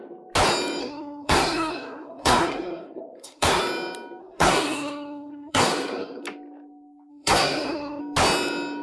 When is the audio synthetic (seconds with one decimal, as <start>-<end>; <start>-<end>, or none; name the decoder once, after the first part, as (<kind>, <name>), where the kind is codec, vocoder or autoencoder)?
0.8-3.6 (codec, SNAC); 4.2-6.2; 7.1-8.0